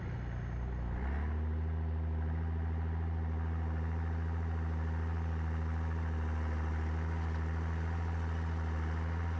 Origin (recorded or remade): recorded